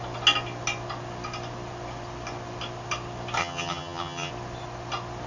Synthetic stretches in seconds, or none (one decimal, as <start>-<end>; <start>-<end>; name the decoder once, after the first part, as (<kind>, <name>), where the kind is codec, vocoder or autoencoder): 3.4-4.3 (vocoder, HiFi-GAN)